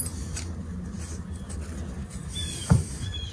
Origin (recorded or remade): recorded